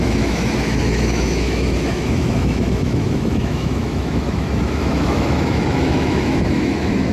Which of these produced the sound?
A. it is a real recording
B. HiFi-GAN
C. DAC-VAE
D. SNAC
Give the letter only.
C